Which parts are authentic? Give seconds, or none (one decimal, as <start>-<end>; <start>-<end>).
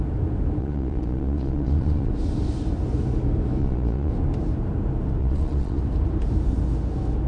0.0-0.6; 2.1-3.6; 4.1-5.2; 5.8-7.3